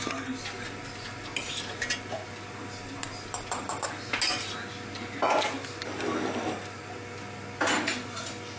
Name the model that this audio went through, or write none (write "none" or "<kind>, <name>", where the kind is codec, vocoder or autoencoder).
none